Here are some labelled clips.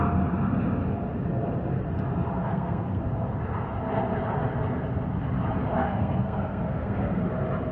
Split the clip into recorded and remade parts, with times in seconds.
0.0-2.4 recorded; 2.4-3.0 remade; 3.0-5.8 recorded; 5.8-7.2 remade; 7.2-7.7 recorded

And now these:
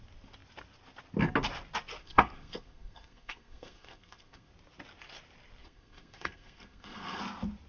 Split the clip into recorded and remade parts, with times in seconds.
0.0-2.0 recorded; 2.0-4.5 remade; 4.5-5.6 recorded; 5.6-7.2 remade; 7.2-7.7 recorded

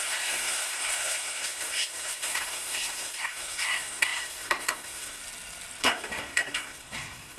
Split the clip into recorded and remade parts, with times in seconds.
0.0-5.2 remade; 5.2-5.8 recorded; 5.8-7.4 remade

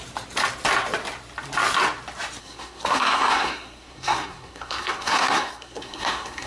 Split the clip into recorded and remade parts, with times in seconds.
0.0-2.4 recorded; 2.4-6.5 remade

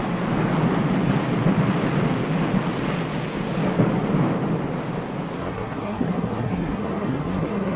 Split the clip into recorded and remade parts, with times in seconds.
0.0-5.4 recorded; 5.4-7.8 remade

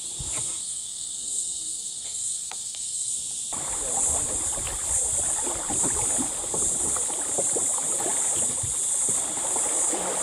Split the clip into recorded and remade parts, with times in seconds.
0.0-0.6 recorded; 0.6-3.1 remade; 3.1-10.2 recorded

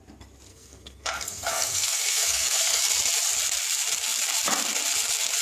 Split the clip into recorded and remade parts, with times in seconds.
0.0-0.5 recorded; 0.5-2.8 remade; 2.8-5.4 recorded

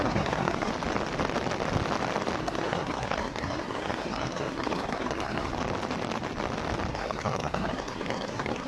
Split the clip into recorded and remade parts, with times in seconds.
0.0-0.7 remade; 0.7-2.4 recorded; 2.4-5.5 remade; 5.5-6.9 recorded; 6.9-8.7 remade